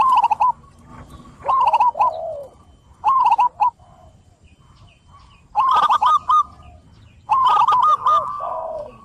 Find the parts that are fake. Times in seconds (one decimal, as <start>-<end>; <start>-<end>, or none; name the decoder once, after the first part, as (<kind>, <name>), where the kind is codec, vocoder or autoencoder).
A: 8.3-9.0 (codec, SNAC)